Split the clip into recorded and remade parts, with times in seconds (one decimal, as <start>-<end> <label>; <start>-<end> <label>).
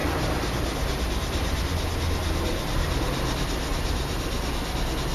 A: 0.0-1.6 remade; 1.6-3.7 recorded; 3.7-4.5 remade; 4.5-5.1 recorded